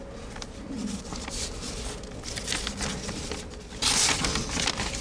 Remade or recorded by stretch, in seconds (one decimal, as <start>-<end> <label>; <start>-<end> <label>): 0.0-5.0 recorded